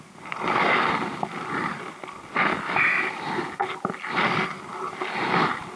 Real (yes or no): yes